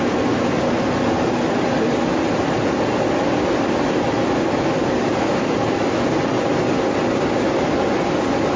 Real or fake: real